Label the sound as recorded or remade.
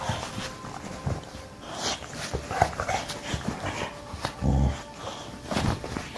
recorded